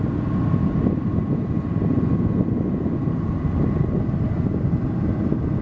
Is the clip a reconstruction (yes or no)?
no